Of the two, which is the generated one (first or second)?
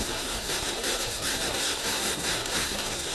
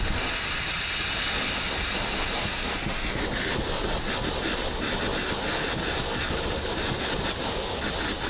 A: first